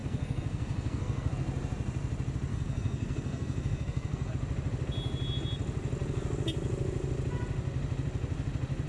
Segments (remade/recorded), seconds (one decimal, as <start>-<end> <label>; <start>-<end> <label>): 0.0-1.3 remade; 1.3-2.5 recorded; 2.5-4.3 remade; 4.3-8.9 recorded